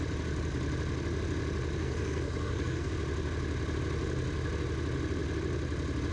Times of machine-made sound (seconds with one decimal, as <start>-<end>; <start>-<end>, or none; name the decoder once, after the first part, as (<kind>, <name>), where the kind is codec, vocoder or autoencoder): 1.8-2.9 (codec, SNAC)